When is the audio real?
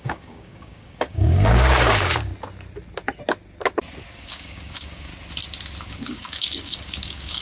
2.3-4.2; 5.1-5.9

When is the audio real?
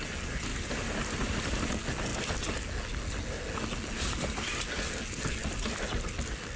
0.0-0.5; 1.7-6.6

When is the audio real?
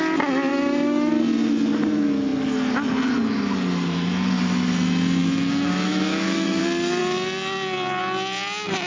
0.0-0.5; 1.1-5.2; 6.6-8.9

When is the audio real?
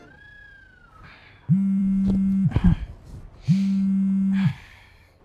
0.0-4.5